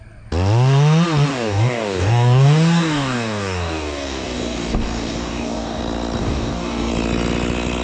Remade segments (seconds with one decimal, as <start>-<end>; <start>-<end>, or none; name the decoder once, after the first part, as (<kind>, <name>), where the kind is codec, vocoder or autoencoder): 1.3-5.8 (codec, DAC); 6.2-6.9